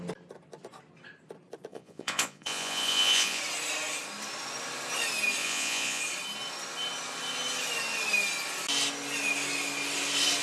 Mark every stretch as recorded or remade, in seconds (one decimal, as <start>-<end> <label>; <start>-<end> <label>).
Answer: 0.0-1.7 recorded; 1.7-3.4 remade; 3.4-5.4 recorded; 5.4-6.0 remade; 6.0-10.4 recorded